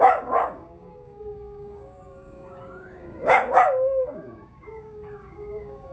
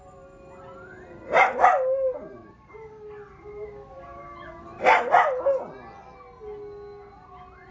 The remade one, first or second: first